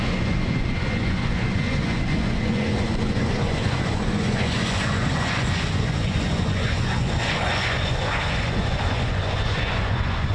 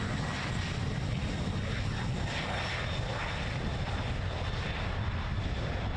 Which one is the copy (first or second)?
first